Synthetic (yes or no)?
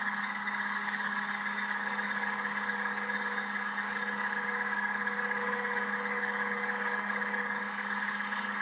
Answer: yes